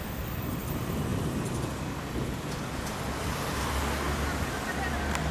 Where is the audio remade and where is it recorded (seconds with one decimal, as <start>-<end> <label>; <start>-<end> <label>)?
0.0-5.3 recorded